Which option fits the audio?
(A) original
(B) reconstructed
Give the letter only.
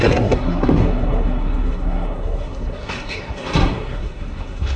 B